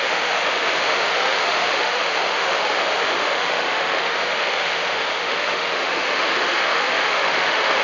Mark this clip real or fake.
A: fake